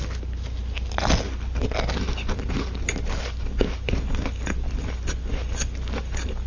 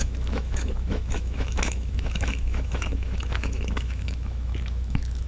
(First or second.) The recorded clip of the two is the first